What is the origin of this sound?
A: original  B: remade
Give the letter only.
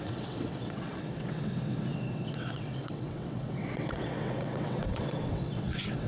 B